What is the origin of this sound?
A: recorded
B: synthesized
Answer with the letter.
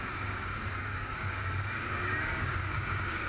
B